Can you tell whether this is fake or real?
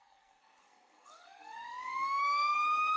fake